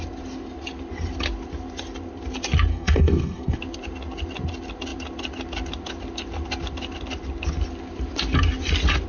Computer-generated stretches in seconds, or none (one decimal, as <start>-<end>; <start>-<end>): 2.7-3.6